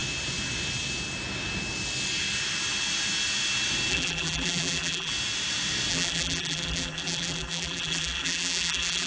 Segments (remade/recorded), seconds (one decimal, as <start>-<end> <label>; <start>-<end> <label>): 0.0-3.9 recorded; 3.9-5.1 remade; 5.1-5.9 recorded; 5.9-9.1 remade